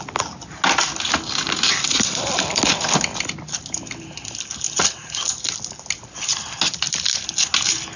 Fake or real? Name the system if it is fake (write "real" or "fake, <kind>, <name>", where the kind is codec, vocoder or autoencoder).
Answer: real